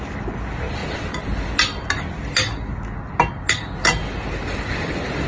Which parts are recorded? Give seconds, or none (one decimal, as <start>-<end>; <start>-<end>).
0.0-5.3